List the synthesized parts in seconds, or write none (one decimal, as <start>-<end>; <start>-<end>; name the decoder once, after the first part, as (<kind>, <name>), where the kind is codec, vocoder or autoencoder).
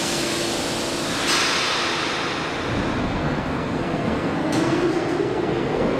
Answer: 0.0-0.5 (codec, SNAC); 3.0-6.0